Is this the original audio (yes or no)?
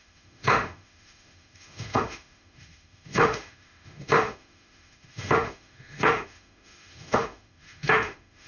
no